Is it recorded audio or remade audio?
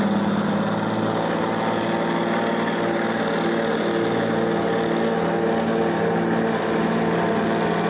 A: recorded